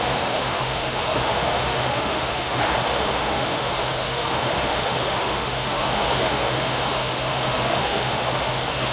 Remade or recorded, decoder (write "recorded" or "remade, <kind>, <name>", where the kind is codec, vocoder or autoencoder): remade, autoencoder, DAC-VAE